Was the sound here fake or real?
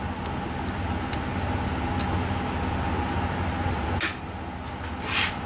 real